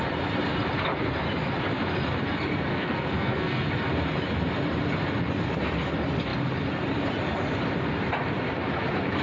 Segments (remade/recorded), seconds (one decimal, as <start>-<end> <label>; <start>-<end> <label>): 0.0-2.7 recorded; 2.7-3.7 remade; 3.7-9.2 recorded